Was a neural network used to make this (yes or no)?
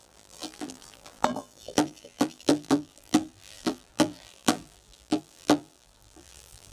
yes